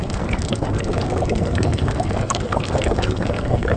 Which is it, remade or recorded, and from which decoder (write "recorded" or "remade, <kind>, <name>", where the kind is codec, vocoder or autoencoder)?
remade, codec, SNAC